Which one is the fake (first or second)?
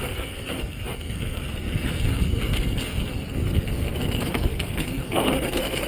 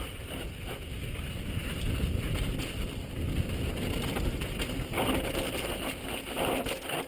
first